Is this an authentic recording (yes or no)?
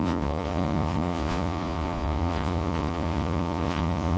no